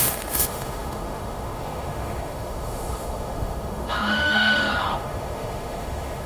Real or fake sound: fake